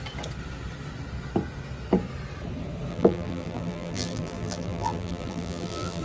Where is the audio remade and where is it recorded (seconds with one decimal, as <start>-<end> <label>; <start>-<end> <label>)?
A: 0.0-2.9 recorded; 2.9-6.0 remade